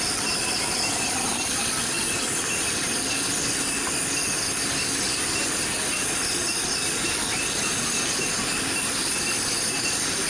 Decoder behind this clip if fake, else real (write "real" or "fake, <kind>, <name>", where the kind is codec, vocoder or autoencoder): real